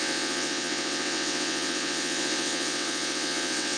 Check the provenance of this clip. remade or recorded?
remade